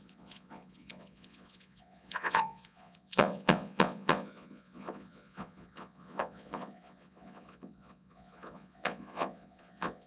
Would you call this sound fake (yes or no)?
yes